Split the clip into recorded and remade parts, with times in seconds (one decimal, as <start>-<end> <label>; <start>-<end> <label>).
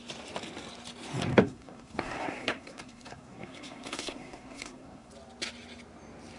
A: 0.0-1.3 recorded; 1.3-5.1 remade; 5.1-6.4 recorded